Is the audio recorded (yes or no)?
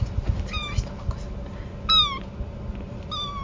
yes